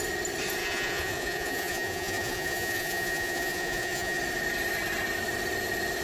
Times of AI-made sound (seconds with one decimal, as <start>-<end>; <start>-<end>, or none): 0.6-4.2